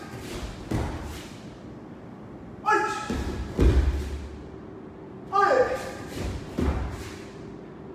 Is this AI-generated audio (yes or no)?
no